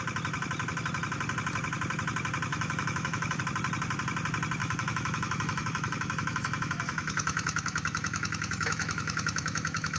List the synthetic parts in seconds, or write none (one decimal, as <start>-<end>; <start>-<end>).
2.5-3.4; 4.6-10.0